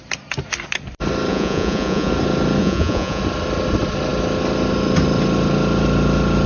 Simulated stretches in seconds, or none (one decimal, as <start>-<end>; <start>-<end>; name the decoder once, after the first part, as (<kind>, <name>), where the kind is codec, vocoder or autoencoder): 1.3-2.1 (vocoder, Vocos); 2.6-3.2